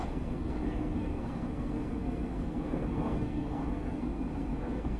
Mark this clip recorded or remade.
remade